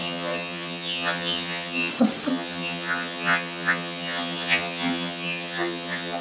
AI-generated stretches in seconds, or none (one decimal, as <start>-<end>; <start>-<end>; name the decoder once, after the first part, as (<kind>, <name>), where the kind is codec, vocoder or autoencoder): 0.0-1.9 (vocoder, HiFi-GAN); 2.3-6.2